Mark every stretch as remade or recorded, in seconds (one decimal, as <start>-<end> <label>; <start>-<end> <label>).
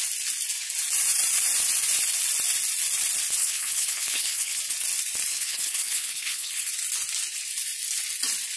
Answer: 0.0-3.4 recorded; 3.4-4.6 remade; 4.6-5.3 recorded; 5.3-6.7 remade; 6.7-8.6 recorded